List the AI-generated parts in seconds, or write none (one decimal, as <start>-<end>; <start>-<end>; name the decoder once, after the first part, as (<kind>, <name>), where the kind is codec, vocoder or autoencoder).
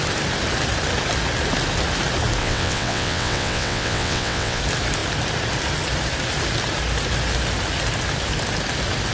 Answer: 2.4-4.6 (vocoder, WaveNeXt)